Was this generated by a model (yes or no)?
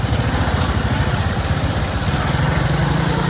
no